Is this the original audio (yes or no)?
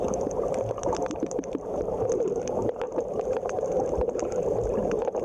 no